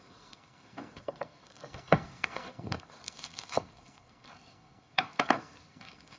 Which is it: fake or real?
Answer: fake